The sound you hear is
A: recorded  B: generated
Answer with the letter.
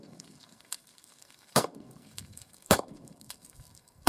B